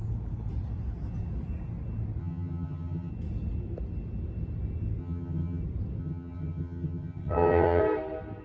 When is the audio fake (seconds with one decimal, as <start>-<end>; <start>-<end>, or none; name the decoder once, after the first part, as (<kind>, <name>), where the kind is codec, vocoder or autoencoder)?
2.2-3.1 (vocoder, HiFi-GAN); 5.0-5.6; 6.0-7.8